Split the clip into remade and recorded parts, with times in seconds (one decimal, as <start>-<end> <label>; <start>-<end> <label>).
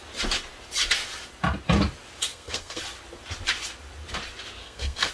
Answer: 0.0-2.3 recorded; 2.3-2.8 remade; 2.8-4.6 recorded; 4.6-5.1 remade